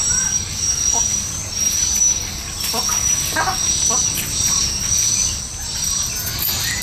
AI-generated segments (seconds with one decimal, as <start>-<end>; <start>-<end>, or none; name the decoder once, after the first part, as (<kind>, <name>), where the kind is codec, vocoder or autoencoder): none